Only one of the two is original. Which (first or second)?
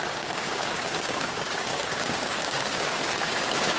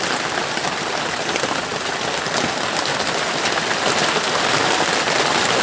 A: second